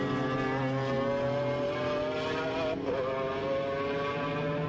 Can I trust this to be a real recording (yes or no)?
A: yes